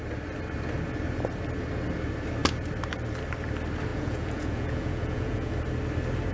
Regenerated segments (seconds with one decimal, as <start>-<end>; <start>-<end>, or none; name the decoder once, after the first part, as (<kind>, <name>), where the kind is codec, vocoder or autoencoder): 3.9-5.5 (vocoder, Vocos)